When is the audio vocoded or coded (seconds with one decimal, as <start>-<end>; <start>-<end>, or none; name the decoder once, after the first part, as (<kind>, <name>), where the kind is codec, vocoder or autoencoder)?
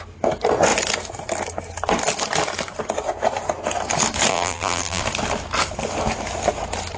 4.3-5.0 (vocoder, BigVGAN v2)